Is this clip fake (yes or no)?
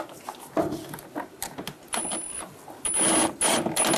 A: no